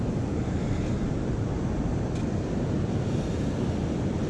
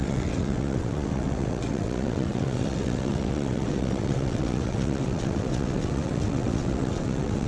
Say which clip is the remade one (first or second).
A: second